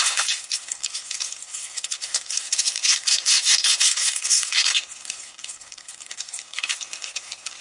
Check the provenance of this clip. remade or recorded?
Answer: remade